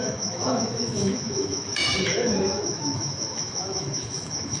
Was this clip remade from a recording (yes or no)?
yes